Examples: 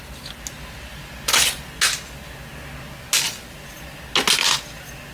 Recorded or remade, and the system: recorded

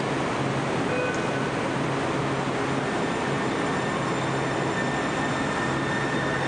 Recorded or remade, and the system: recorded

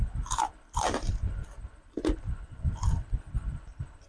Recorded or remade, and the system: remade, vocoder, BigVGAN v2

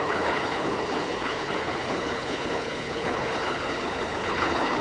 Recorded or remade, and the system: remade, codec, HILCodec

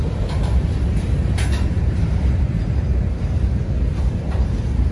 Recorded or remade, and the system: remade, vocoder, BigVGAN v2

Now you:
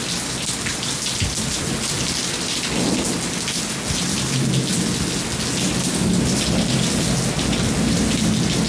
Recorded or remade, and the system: recorded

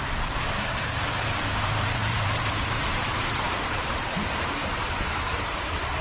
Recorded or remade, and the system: remade, vocoder, BigVGAN v2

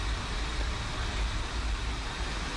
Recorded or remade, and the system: recorded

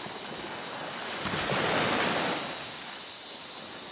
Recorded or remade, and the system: recorded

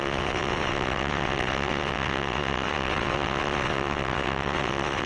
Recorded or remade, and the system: remade, vocoder, WaveNeXt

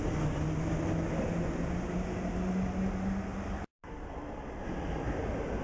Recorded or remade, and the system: recorded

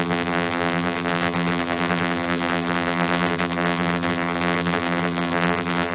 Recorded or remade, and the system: remade, vocoder, BigVGAN v2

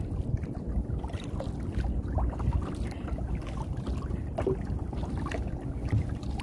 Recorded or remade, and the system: recorded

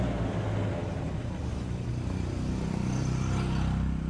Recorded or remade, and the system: recorded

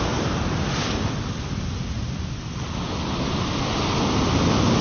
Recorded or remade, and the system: recorded